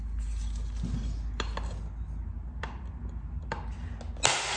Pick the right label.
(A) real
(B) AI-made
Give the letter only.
A